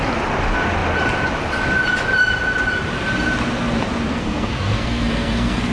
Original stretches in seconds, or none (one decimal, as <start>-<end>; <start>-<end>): 0.0-4.1